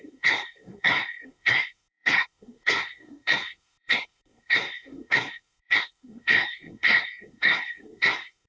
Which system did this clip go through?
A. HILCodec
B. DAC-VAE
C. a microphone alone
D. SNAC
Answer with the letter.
D